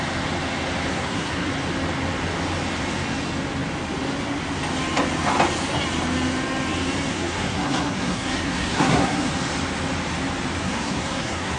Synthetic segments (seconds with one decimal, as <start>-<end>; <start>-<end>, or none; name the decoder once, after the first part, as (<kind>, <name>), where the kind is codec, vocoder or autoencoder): 0.9-1.5 (codec, SNAC); 7.1-9.3; 10.6-11.6